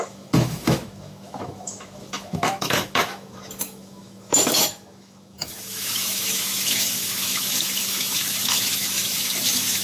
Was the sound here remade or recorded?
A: remade